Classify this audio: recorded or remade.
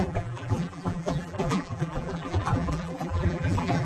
remade